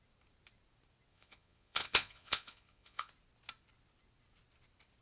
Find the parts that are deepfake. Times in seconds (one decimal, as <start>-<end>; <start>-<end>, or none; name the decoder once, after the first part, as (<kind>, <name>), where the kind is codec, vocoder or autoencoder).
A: 1.1-3.1 (vocoder, Vocos)